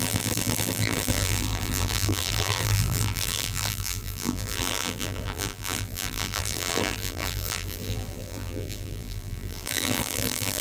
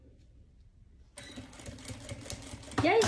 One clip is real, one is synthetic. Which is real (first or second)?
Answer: second